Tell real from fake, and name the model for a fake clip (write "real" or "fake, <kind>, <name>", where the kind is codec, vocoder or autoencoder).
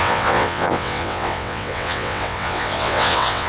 fake, vocoder, WaveNeXt